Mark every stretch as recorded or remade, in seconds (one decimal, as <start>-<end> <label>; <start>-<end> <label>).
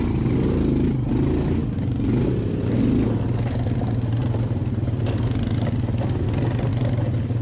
0.0-7.4 recorded